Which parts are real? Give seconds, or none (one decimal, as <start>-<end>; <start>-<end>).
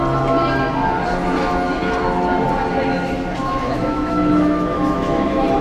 0.0-3.4